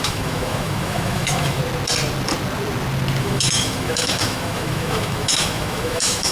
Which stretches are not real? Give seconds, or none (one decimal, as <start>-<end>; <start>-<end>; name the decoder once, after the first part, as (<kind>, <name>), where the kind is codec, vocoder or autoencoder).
0.0-1.6 (autoencoder, DAC-VAE); 3.2-6.3

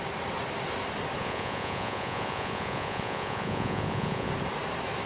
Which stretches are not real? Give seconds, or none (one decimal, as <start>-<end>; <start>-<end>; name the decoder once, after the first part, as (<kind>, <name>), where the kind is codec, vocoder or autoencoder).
1.2-4.3 (vocoder, Vocos)

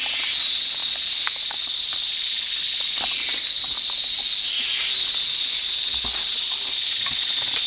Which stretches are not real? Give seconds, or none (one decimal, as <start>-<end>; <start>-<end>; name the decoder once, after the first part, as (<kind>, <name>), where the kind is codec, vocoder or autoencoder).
none

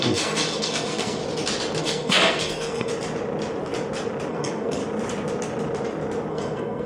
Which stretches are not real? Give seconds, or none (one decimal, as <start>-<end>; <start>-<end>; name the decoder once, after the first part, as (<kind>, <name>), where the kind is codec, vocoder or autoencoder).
0.0-1.2 (codec, SNAC); 1.8-2.9; 4.3-4.8; 6.3-6.9

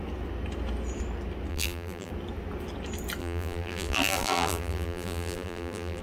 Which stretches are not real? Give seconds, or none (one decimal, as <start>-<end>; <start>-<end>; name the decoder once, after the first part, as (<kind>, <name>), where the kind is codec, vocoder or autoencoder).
1.5-2.1 (vocoder, BigVGAN v2); 3.2-6.0

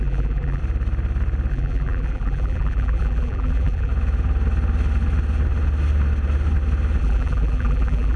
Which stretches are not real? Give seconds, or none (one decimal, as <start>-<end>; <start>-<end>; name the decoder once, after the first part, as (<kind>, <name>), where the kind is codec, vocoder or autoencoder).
0.0-0.6 (vocoder, BigVGAN v2); 1.5-3.9; 7.0-8.2